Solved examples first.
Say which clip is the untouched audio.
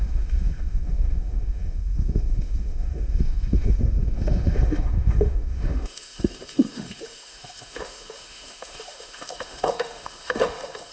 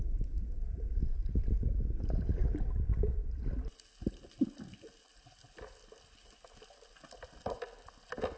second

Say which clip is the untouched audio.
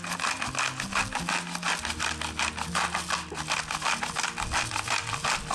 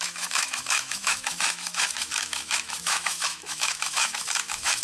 first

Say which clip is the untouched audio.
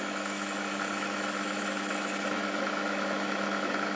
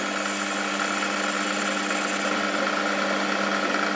second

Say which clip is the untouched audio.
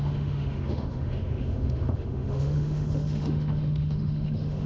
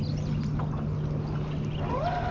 second